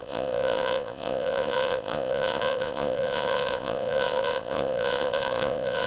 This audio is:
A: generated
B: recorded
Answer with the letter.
A